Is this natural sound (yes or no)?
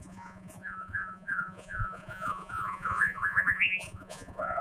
no